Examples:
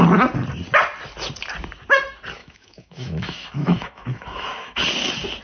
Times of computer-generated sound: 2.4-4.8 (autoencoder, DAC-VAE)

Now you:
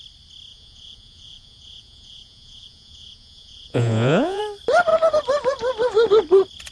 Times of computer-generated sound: 0.5-4.4 (vocoder, Vocos)

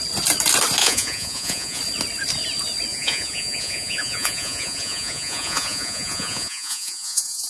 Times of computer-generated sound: 0.8-1.8 (vocoder, Vocos); 2.9-7.5

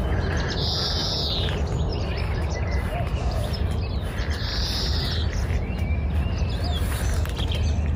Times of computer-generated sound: 1.9-3.5 (vocoder, BigVGAN v2)

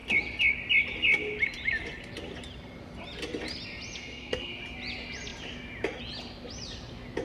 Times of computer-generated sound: 4.0-4.5 (codec, SNAC)

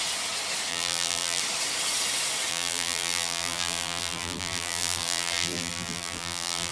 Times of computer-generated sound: 0.7-1.4 (vocoder, BigVGAN v2); 2.5-6.7

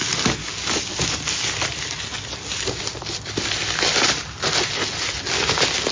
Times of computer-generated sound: 0.4-1.1 (codec, DAC)

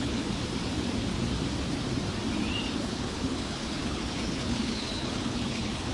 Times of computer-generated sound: 0.0-0.4 (codec, HILCodec); 2.8-5.9